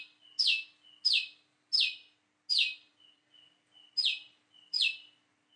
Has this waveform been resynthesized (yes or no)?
no